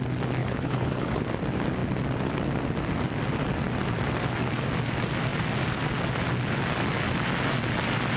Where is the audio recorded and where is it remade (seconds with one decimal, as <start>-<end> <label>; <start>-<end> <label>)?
0.0-0.4 recorded; 0.4-1.2 remade; 1.2-8.2 recorded